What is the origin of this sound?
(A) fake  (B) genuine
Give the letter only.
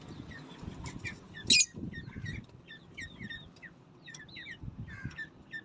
B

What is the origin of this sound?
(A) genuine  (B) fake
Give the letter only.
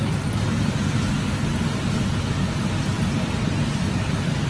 A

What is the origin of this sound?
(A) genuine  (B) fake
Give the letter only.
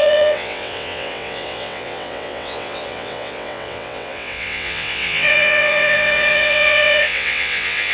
B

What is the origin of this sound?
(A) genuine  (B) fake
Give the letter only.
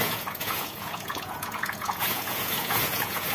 B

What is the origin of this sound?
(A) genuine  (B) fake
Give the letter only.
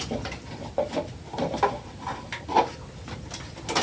A